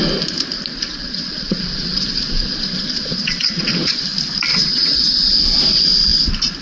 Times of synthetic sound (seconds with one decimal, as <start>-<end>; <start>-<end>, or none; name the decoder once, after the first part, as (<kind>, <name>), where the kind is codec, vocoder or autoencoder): 1.0-4.0 (vocoder, Vocos); 4.5-5.6